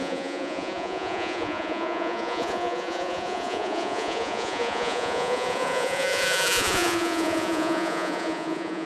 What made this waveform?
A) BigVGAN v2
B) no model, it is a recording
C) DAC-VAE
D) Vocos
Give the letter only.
D